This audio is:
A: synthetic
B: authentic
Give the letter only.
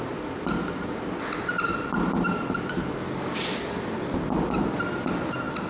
B